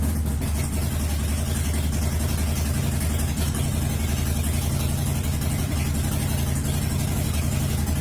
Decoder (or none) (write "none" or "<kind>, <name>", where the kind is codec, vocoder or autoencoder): none